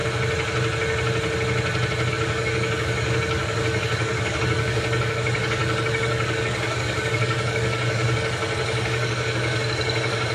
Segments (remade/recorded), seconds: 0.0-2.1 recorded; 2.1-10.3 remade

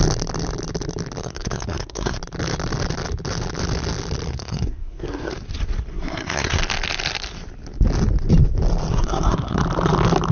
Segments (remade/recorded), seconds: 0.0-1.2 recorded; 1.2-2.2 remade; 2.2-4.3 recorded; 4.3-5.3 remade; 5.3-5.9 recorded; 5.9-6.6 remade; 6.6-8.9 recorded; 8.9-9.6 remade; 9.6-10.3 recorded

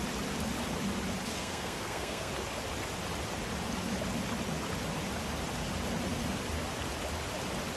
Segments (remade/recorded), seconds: 0.0-1.3 recorded; 1.3-2.3 remade; 2.3-7.8 recorded